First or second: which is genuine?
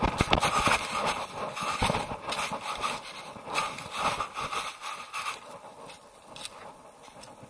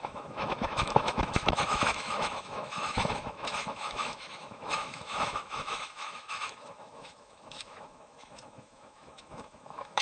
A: first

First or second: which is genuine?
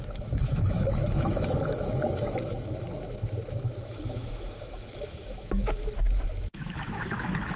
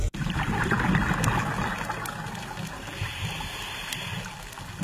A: second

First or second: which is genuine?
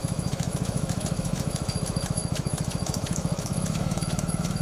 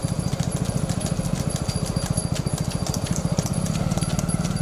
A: second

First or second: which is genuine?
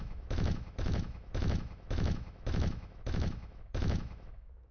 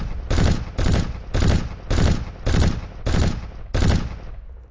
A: second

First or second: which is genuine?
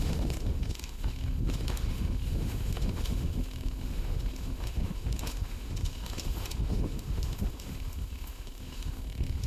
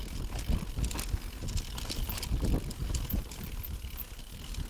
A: second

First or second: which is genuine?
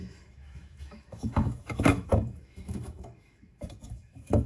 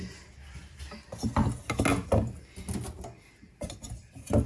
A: second